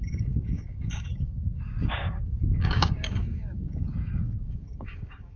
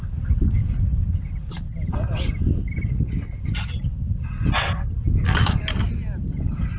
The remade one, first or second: first